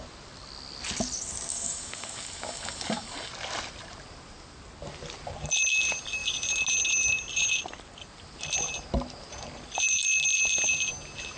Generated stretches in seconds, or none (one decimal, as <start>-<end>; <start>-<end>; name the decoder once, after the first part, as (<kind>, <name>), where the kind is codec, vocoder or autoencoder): 1.5-3.3 (codec, DAC)

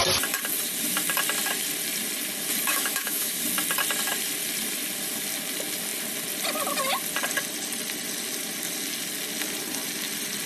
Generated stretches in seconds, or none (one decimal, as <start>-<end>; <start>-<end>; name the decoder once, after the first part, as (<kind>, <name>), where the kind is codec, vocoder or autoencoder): 2.7-3.4 (autoencoder, DAC-VAE)

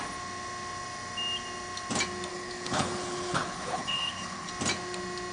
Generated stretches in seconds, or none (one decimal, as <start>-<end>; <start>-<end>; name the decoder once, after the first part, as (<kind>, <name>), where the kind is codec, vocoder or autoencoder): 2.3-4.5 (codec, HILCodec)

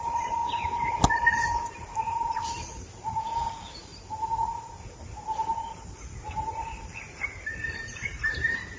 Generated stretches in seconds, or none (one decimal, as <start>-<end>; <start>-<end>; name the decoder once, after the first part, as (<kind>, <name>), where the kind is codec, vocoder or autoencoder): 0.0-0.4 (vocoder, BigVGAN v2); 1.7-3.9; 5.6-8.8

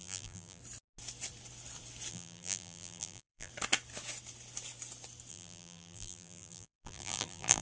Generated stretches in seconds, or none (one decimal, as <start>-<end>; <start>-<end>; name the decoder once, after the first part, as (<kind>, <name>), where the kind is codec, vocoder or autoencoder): 0.0-0.6 (vocoder, BigVGAN v2); 2.1-3.5; 5.3-7.6

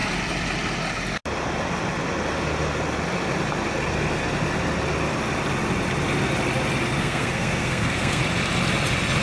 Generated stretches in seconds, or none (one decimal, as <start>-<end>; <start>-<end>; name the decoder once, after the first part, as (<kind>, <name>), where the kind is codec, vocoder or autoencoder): 7.0-8.2 (codec, SNAC)

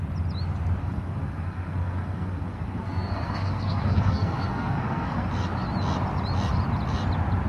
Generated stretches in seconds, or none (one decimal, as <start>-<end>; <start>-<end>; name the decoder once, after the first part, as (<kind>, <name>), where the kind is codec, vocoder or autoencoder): 0.8-5.3 (codec, SNAC)

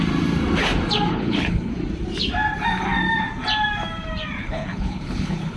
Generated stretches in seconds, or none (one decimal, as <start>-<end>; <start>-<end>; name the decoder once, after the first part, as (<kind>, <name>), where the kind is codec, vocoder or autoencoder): 1.1-1.7 (codec, HILCodec); 4.4-5.6